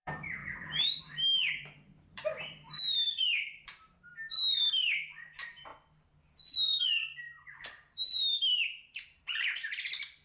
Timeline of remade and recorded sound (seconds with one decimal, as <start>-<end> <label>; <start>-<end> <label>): 0.0-0.4 remade; 0.4-1.0 recorded; 1.0-4.1 remade; 4.1-4.7 recorded; 4.7-5.7 remade; 5.7-6.8 recorded; 6.8-10.2 remade